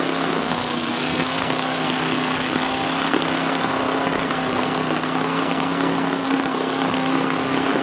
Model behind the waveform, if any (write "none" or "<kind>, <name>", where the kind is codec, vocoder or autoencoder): codec, SNAC